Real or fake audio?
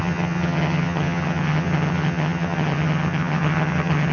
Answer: fake